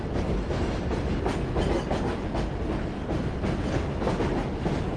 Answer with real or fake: real